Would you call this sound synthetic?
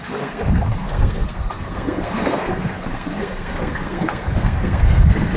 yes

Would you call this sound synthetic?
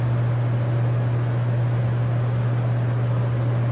no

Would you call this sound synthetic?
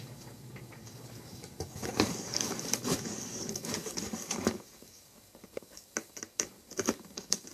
yes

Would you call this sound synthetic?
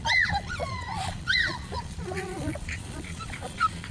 yes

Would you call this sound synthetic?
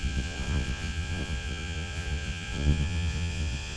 yes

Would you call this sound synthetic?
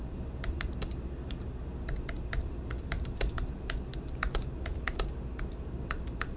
yes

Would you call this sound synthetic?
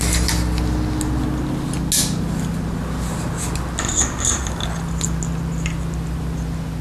no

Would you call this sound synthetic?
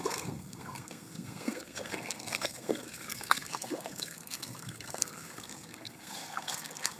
yes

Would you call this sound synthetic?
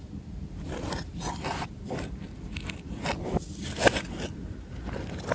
yes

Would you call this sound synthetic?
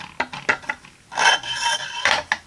no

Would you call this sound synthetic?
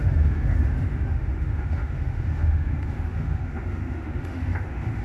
yes